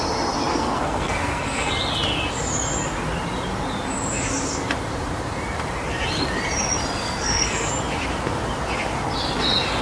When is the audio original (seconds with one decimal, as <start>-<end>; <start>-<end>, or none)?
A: 0.0-0.5; 1.7-7.0; 7.7-9.8

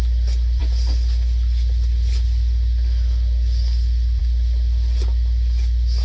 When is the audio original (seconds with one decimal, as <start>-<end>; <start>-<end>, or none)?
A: 0.0-6.0

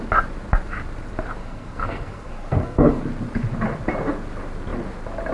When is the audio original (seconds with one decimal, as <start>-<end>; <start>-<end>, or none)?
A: 0.0-1.4; 3.0-5.3

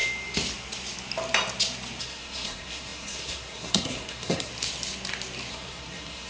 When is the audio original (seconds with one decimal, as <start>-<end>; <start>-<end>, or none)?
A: 0.0-2.0; 4.5-5.5

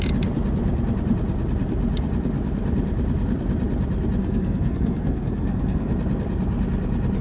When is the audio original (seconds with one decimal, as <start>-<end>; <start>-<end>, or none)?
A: 0.0-4.2; 5.9-7.2

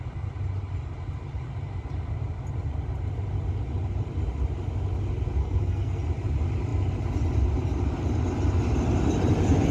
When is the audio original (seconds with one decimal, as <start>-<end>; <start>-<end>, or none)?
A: 0.0-5.4; 6.0-9.7

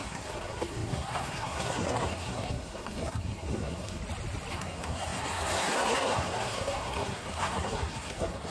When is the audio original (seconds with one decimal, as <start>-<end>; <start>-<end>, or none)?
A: 4.0-4.5